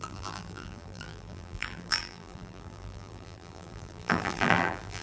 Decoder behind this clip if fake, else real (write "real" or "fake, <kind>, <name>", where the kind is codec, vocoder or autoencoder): fake, vocoder, BigVGAN v2